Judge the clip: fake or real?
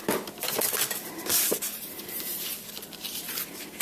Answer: fake